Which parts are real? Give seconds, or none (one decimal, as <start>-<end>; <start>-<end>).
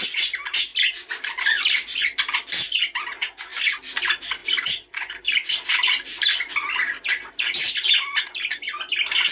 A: 0.0-9.3